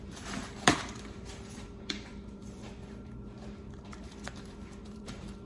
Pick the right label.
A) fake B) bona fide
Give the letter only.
A